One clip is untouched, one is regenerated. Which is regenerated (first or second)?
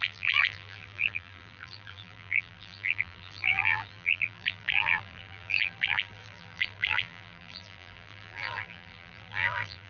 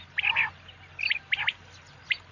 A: first